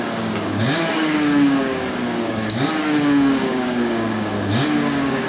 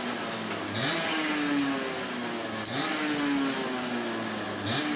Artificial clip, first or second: first